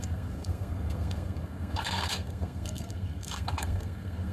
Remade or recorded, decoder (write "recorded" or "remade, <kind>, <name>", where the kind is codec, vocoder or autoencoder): remade, codec, SNAC